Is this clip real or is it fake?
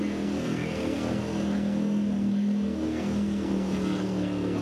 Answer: fake